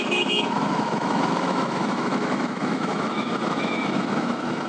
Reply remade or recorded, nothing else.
remade